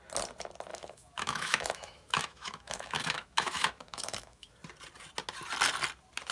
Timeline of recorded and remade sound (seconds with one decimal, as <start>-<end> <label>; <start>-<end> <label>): 0.0-0.7 recorded; 0.7-4.5 remade; 4.5-6.3 recorded